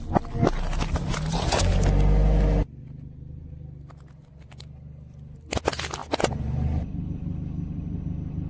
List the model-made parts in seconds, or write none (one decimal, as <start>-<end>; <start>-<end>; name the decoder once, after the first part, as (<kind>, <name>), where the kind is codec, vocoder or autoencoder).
none